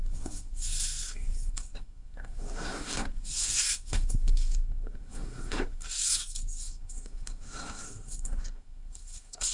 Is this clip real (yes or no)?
no